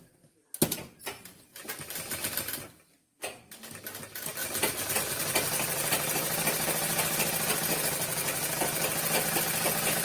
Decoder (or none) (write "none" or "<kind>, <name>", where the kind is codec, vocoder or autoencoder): none